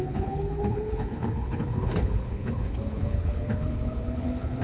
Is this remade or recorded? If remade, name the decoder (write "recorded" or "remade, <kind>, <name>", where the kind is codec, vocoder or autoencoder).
remade, codec, HILCodec